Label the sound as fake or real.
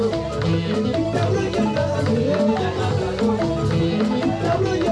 real